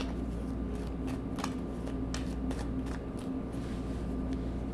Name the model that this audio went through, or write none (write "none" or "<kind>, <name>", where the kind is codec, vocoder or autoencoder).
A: none